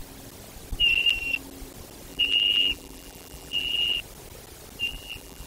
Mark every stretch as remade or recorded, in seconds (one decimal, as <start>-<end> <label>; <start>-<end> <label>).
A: 0.0-2.1 recorded; 2.1-4.0 remade; 4.0-4.9 recorded; 4.9-5.5 remade